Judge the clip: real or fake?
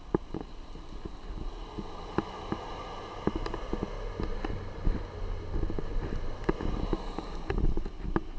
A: real